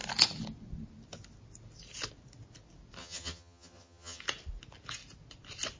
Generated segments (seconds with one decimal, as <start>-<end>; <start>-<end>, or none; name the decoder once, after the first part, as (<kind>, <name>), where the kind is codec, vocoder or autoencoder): 3.0-4.2 (vocoder, HiFi-GAN)